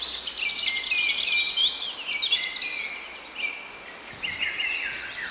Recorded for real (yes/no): yes